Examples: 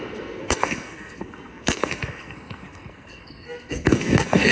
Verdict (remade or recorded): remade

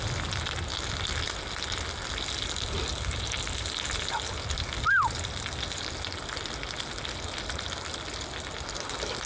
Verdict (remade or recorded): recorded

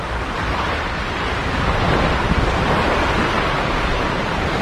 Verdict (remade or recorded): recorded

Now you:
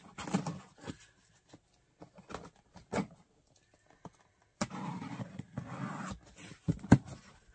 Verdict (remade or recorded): recorded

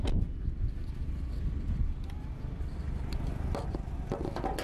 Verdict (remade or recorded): recorded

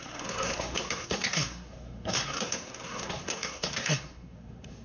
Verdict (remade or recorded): remade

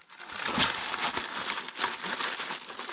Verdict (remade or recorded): recorded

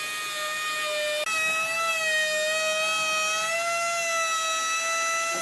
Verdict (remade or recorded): recorded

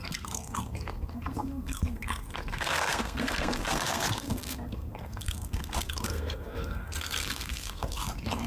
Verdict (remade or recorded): remade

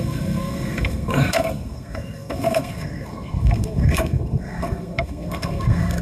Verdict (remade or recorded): remade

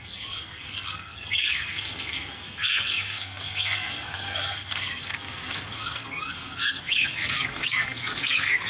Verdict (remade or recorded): remade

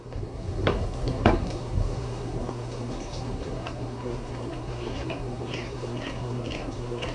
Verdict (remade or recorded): remade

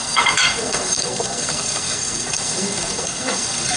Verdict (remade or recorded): remade